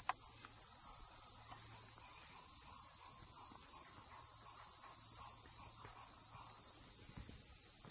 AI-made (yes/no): no